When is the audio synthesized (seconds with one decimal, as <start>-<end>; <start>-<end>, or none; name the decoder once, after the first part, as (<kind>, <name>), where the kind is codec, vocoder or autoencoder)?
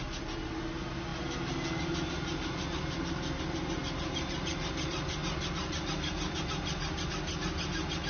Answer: none